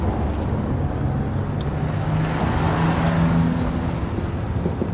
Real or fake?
real